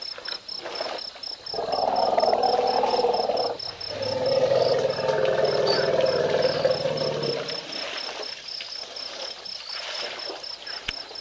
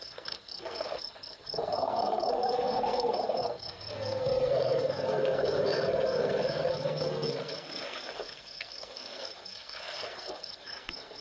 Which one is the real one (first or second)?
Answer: first